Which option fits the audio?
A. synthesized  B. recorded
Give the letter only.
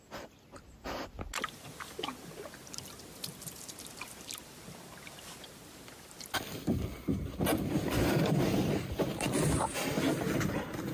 B